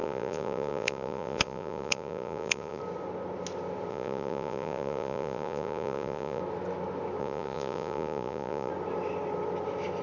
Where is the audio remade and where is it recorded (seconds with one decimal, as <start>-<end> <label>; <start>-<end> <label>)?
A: 0.0-2.8 remade; 2.8-3.9 recorded; 3.9-6.4 remade; 6.4-7.2 recorded; 7.2-8.7 remade; 8.7-10.0 recorded